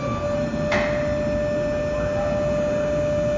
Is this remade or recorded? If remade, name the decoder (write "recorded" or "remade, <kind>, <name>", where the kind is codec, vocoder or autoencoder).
recorded